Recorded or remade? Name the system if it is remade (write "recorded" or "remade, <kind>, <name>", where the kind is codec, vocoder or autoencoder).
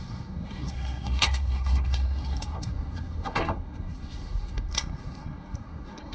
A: remade, codec, SNAC